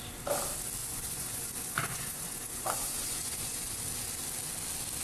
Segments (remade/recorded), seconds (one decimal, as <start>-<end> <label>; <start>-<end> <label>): 0.0-0.8 recorded; 0.8-3.8 remade; 3.8-5.0 recorded